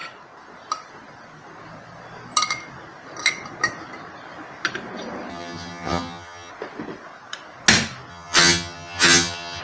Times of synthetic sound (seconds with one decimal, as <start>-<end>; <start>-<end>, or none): 5.3-6.5; 8.1-9.6

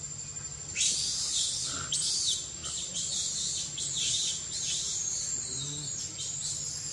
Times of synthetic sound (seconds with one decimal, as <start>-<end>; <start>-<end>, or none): none

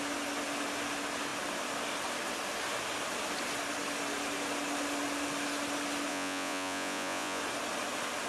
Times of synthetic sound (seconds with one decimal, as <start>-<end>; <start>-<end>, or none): 6.1-7.4

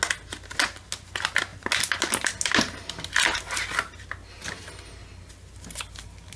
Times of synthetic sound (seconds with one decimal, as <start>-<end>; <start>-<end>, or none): none

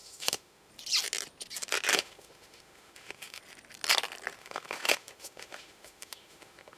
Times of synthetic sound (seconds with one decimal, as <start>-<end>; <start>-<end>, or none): 0.0-0.7; 1.9-3.4; 4.4-6.8

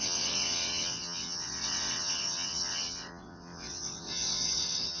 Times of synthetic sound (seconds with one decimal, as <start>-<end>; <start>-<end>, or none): 0.0-5.0

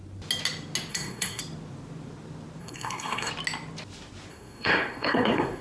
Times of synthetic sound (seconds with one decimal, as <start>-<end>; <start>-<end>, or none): 0.9-1.4; 2.6-3.3; 4.3-5.6

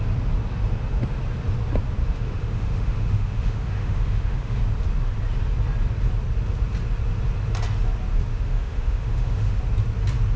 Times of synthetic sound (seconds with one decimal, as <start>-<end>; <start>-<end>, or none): 2.0-4.6; 8.3-9.6